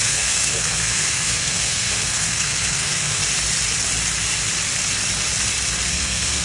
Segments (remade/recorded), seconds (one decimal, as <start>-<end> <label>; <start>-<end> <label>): 0.0-3.2 remade; 3.2-5.9 recorded; 5.9-6.4 remade